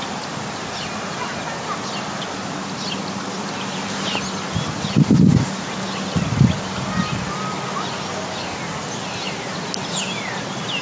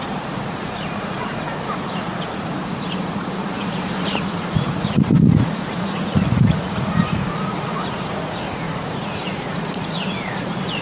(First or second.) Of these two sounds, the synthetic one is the second